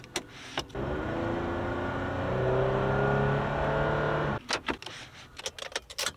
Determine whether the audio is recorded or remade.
recorded